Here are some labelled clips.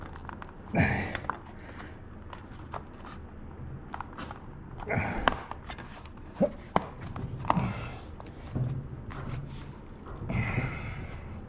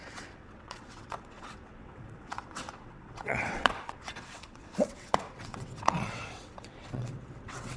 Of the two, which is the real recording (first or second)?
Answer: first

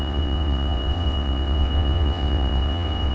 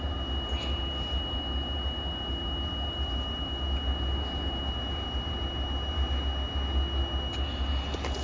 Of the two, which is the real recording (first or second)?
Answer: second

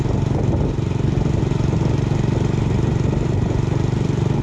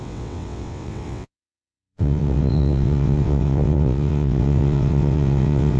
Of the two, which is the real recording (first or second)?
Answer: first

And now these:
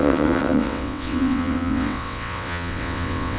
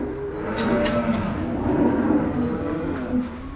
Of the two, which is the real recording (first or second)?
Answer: second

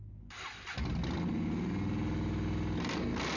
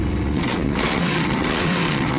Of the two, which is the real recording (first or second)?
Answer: first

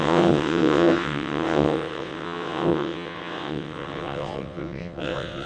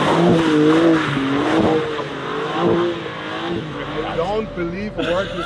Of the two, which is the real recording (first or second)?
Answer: second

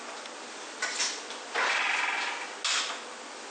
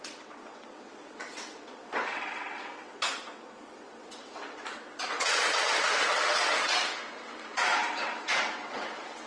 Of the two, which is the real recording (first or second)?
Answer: first